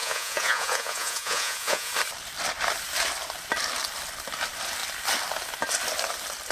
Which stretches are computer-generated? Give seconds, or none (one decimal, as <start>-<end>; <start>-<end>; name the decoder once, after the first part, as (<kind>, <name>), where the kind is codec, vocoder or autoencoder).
0.0-1.9 (vocoder, Vocos)